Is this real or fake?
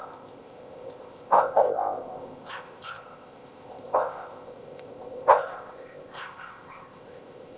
fake